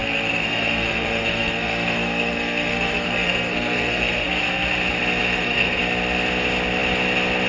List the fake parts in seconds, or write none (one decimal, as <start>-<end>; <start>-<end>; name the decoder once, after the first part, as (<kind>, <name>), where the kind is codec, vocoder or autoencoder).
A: 0.0-4.4 (codec, SNAC); 5.2-5.8